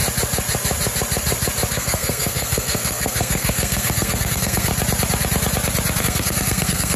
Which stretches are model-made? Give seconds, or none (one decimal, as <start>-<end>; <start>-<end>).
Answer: 1.7-4.7; 6.0-7.0